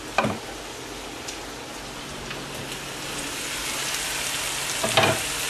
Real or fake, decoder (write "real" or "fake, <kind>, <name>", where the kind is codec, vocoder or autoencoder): real